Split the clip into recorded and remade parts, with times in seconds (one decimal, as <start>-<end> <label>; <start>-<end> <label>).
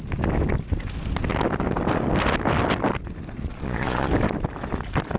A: 0.0-3.5 recorded; 3.5-4.1 remade; 4.1-5.2 recorded